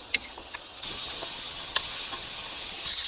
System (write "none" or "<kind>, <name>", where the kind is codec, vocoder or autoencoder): vocoder, HiFi-GAN